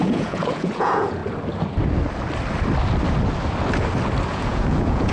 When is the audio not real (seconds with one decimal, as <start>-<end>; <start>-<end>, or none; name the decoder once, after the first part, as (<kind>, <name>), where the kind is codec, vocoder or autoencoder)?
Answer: 0.0-1.2 (vocoder, Vocos); 4.3-5.1